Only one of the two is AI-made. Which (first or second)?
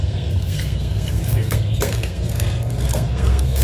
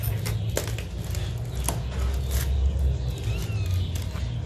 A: first